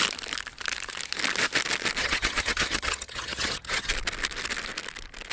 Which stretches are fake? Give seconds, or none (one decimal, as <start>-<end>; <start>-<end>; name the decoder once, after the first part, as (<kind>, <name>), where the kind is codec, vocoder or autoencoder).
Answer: 2.0-3.9 (vocoder, HiFi-GAN)